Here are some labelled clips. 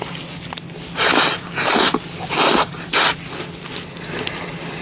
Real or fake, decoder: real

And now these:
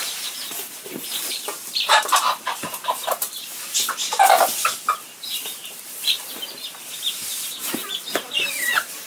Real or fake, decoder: fake, vocoder, BigVGAN v2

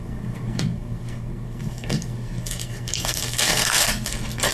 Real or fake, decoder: fake, codec, SNAC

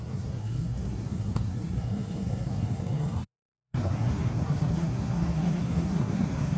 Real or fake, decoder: fake, codec, SNAC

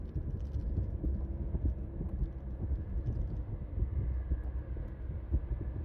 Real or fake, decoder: real